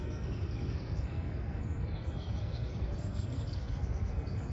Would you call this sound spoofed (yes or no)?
yes